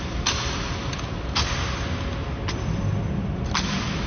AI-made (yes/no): no